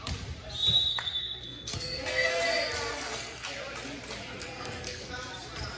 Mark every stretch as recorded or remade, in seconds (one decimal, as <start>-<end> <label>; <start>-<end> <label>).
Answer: 0.0-0.9 recorded; 0.9-2.4 remade; 2.4-2.9 recorded; 2.9-3.5 remade; 3.5-4.4 recorded; 4.4-5.1 remade; 5.1-5.8 recorded